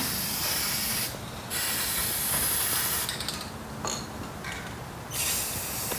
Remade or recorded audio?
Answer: recorded